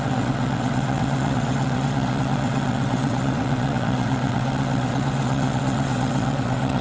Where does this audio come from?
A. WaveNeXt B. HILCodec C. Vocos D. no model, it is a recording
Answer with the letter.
A